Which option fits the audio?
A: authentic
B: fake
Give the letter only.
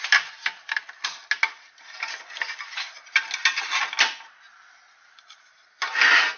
A